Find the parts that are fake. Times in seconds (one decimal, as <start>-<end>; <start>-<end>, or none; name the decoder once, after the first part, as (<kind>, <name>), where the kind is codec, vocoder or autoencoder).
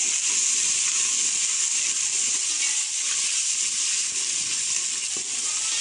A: none